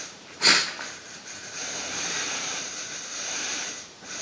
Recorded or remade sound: remade